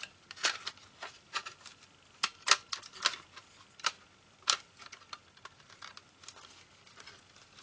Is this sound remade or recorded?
recorded